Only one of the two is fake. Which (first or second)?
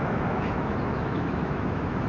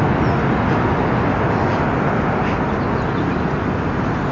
first